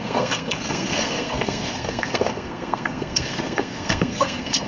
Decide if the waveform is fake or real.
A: fake